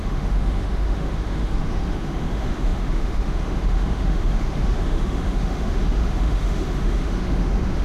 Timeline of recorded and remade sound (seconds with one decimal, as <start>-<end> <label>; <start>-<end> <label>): 0.0-7.8 remade